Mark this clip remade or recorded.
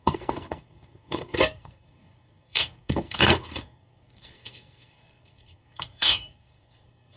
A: remade